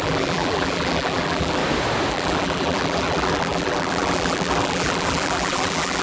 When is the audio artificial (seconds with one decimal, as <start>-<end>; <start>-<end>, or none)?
0.0-1.6; 2.1-6.0